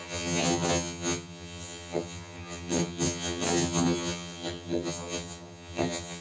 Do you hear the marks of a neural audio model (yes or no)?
yes